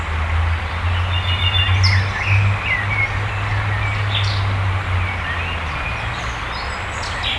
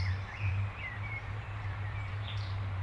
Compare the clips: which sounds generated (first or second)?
second